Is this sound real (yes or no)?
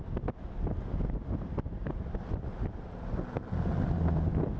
yes